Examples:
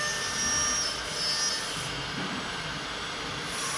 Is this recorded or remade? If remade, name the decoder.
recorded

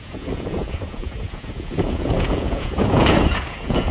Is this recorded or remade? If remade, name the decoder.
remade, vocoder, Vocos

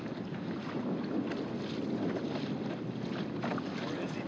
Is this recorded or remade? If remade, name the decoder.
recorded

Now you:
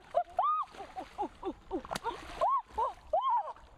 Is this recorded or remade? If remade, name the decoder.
recorded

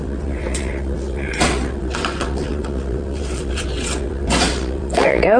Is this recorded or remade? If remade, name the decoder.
remade, vocoder, WaveNeXt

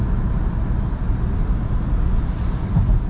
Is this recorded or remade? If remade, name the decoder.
recorded